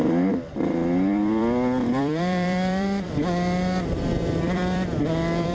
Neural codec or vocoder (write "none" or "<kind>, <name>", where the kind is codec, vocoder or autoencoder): vocoder, BigVGAN v2